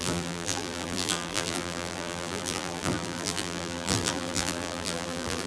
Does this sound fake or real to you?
fake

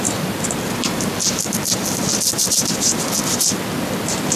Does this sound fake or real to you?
real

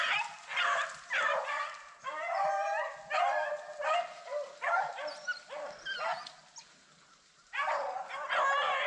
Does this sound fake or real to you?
real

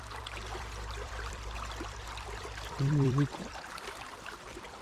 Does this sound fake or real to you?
fake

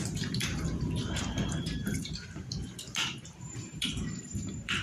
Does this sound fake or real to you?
fake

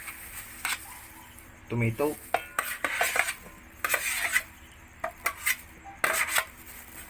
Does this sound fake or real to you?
real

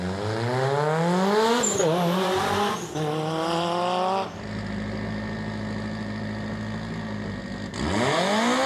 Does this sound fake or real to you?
real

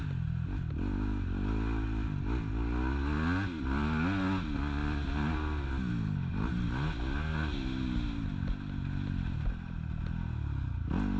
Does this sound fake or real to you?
real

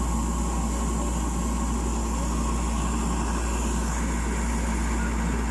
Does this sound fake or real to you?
real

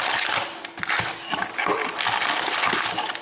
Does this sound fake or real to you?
real